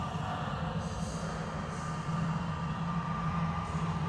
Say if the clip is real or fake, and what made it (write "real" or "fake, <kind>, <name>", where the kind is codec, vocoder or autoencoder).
real